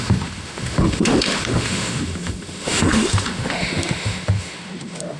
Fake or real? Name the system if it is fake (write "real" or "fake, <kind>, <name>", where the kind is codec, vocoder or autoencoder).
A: fake, autoencoder, DAC-VAE